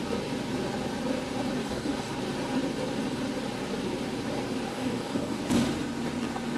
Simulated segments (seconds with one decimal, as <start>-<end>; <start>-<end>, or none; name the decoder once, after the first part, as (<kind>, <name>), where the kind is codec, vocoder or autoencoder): 1.6-2.1 (codec, DAC); 4.7-5.4